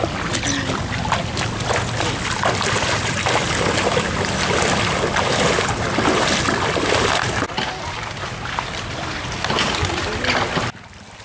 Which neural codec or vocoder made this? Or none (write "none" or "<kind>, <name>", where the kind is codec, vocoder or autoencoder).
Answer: none